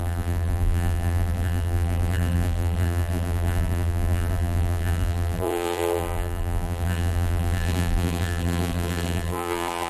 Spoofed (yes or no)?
yes